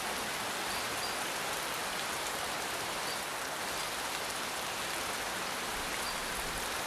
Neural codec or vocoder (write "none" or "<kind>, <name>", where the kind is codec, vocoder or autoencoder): none